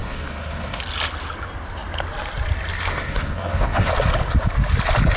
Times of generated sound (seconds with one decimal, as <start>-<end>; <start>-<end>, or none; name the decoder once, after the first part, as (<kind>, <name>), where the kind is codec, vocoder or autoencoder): 0.0-0.8 (codec, SNAC); 2.9-3.9